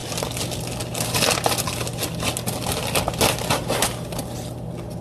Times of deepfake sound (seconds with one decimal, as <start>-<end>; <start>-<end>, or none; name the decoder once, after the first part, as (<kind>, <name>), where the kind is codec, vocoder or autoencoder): none

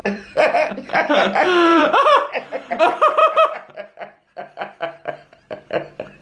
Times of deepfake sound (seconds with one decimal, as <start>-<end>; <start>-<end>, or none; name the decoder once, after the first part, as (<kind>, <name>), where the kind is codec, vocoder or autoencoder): 0.0-0.7 (vocoder, BigVGAN v2); 1.7-2.8; 3.2-4.3

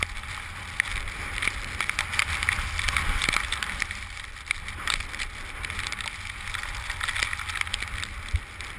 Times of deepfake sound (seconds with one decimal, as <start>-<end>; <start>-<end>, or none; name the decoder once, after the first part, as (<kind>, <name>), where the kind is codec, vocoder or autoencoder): 3.2-6.0 (vocoder, BigVGAN v2)

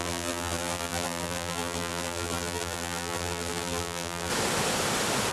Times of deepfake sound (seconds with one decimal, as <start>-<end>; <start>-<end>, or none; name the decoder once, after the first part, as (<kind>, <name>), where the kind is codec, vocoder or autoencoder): 0.0-4.3 (vocoder, BigVGAN v2)

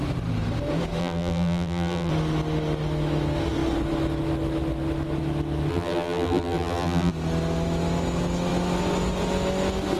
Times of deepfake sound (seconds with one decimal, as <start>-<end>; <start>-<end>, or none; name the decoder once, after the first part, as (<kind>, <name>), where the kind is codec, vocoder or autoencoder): 1.0-2.1 (vocoder, BigVGAN v2); 5.7-7.1

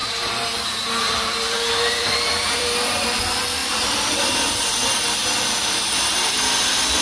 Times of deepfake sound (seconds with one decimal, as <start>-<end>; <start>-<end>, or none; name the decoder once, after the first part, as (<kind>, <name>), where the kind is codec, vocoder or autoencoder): 0.0-3.2 (vocoder, BigVGAN v2); 3.6-4.6; 5.2-6.4